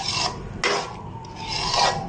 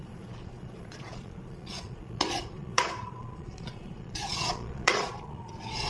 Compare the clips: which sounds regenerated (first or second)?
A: second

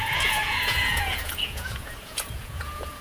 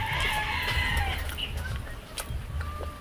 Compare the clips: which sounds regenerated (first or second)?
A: first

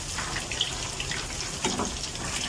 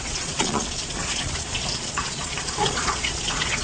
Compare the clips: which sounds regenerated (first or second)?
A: second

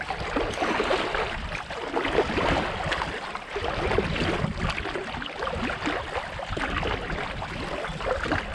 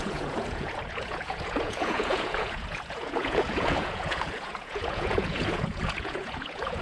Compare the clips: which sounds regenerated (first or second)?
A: second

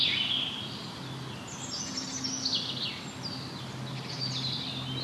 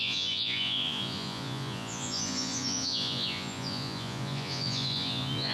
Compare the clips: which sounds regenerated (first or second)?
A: second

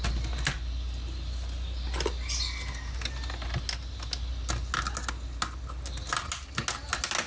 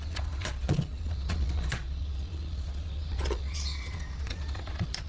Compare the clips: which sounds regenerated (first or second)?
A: second